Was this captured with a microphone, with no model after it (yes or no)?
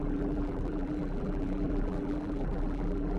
no